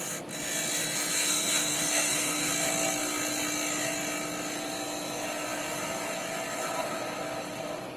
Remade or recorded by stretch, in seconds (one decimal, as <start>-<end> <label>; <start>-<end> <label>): 0.0-1.1 recorded; 1.1-2.5 remade; 2.5-8.0 recorded